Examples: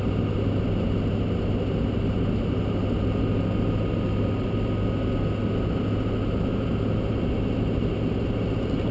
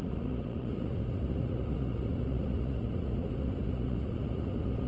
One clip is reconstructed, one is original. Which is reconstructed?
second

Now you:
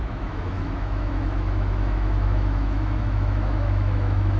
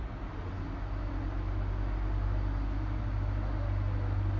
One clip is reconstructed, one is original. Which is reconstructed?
first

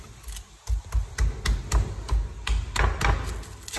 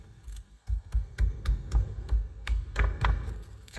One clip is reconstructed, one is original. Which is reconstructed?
second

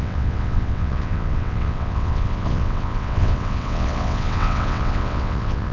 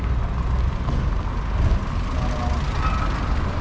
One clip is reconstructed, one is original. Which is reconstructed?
first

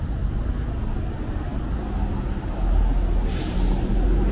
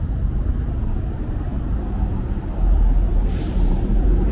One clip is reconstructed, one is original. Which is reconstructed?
second